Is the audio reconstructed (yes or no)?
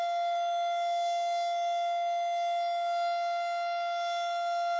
no